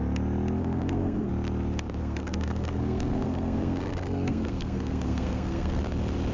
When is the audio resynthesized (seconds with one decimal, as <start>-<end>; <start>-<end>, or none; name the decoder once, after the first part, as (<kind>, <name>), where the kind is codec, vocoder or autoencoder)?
0.6-1.3 (codec, SNAC); 2.0-5.8